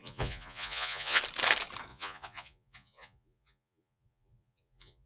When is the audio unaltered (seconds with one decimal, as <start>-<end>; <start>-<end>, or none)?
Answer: 1.2-1.9